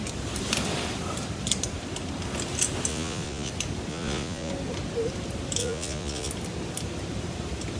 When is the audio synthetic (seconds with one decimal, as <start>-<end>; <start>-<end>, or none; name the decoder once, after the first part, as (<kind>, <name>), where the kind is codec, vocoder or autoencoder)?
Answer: 2.9-3.5 (vocoder, Vocos); 3.9-4.5; 5.6-6.3